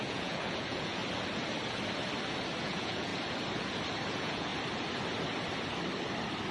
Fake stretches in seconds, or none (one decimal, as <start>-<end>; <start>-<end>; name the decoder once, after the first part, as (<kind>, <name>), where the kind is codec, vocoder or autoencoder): 0.0-1.0 (vocoder, Vocos); 2.6-3.1; 4.1-4.5